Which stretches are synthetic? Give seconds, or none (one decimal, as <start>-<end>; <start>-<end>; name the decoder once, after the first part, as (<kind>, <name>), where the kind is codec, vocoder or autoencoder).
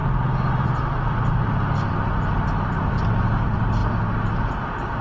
1.9-3.8 (vocoder, BigVGAN v2)